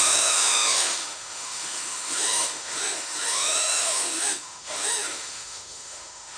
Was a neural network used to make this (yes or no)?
yes